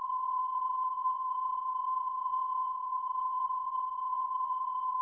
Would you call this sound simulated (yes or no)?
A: yes